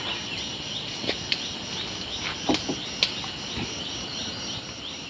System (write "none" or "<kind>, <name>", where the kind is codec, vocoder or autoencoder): none